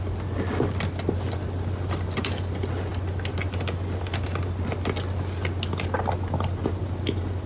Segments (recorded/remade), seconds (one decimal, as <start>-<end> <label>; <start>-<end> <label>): 0.0-7.5 recorded